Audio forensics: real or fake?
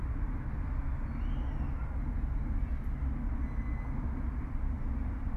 real